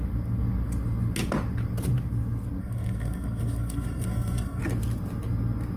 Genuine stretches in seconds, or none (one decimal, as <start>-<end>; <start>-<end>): 0.0-2.6; 4.6-5.8